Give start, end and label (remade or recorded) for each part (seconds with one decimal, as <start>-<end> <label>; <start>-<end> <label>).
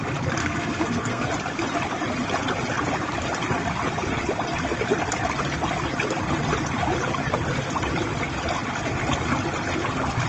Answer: 0.0-0.4 recorded; 0.4-1.3 remade; 1.3-10.3 recorded